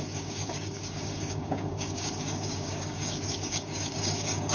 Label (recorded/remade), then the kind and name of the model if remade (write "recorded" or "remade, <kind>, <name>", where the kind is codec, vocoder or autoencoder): remade, codec, DAC